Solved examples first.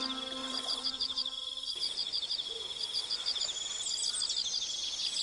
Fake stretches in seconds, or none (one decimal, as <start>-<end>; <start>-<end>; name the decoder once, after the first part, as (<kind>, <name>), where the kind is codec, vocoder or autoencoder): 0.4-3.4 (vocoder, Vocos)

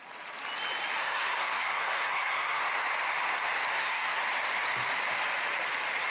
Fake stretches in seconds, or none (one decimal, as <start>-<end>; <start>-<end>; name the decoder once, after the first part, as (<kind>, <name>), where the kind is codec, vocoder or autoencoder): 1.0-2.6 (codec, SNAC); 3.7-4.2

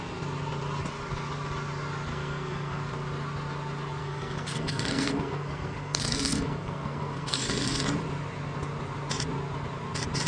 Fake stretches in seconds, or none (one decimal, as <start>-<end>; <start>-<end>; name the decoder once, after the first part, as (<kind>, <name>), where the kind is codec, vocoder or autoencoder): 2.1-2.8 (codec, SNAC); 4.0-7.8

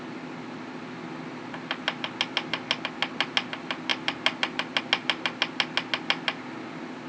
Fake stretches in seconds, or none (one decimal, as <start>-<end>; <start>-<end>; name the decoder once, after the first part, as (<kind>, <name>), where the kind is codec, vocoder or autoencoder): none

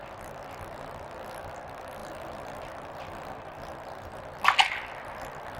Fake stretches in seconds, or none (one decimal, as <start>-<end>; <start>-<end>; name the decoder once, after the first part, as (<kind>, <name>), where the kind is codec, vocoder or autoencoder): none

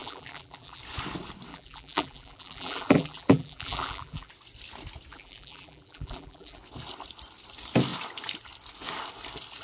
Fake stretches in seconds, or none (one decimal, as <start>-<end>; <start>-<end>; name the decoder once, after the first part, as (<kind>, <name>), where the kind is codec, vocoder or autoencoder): 0.0-0.8 (vocoder, BigVGAN v2); 1.5-4.3; 5.1-6.6

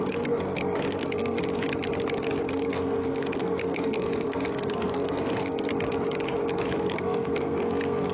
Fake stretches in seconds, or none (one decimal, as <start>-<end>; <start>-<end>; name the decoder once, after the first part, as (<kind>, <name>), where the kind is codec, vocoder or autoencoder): 0.0-1.4 (codec, SNAC); 2.5-5.7; 6.8-8.1

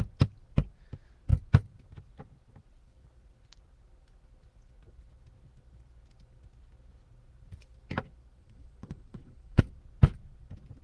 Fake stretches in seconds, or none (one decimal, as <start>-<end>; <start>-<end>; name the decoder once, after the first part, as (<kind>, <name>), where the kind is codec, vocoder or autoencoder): 8.4-9.6 (vocoder, Vocos)